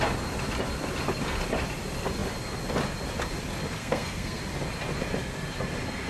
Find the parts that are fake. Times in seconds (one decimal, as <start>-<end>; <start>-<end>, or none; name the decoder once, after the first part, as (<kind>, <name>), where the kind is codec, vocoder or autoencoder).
3.8-4.4 (codec, SNAC)